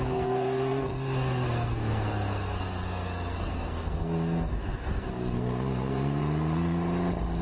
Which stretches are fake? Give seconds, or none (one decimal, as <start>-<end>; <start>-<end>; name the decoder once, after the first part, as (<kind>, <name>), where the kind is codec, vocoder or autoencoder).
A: 0.0-6.2 (codec, SNAC)

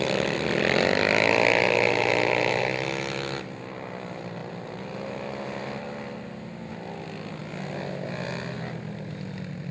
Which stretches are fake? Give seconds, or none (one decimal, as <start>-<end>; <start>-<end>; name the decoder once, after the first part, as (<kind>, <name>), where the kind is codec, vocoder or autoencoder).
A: none

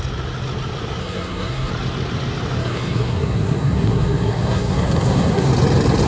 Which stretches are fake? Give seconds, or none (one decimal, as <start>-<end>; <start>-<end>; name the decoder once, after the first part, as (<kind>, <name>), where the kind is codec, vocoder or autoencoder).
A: 1.0-1.7 (codec, SNAC); 2.6-5.5

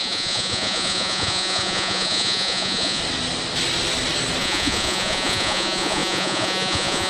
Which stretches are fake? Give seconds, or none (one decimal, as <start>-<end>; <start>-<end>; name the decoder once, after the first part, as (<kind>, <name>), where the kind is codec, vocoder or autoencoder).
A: 0.0-3.0 (vocoder, Vocos); 4.4-7.1